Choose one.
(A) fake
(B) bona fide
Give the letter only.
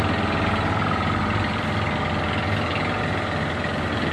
B